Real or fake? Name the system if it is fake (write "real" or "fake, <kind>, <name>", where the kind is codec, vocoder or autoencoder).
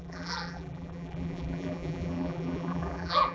fake, vocoder, BigVGAN v2